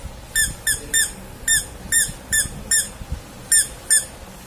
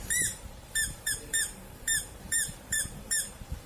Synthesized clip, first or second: second